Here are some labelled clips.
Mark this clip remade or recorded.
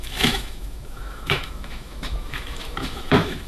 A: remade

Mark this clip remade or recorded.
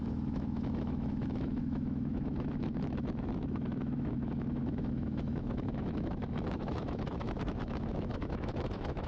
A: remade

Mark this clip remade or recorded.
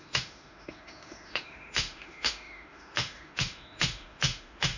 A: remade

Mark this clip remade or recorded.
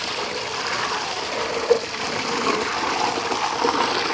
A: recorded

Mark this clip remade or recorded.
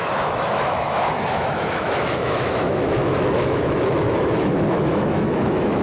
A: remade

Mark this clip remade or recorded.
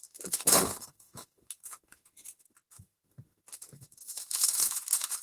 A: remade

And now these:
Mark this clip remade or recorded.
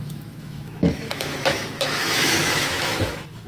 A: remade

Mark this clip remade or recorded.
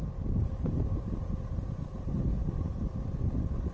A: recorded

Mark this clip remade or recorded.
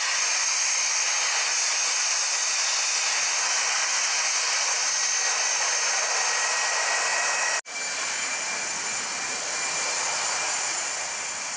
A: recorded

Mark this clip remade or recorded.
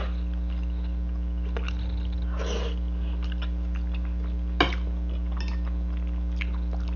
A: recorded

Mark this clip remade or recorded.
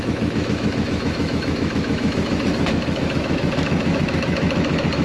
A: remade